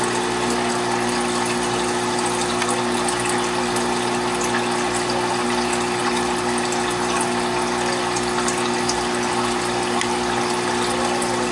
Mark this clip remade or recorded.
recorded